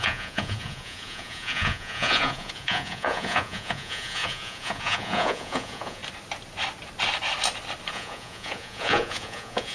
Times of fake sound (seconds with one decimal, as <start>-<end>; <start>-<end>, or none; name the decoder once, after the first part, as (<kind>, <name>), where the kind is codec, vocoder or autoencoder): 0.0-6.0 (vocoder, Vocos); 7.9-9.7